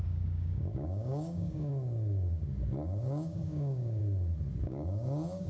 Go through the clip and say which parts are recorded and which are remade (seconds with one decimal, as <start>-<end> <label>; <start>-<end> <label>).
0.0-1.7 remade; 1.7-3.0 recorded; 3.0-4.0 remade; 4.0-4.6 recorded; 4.6-5.5 remade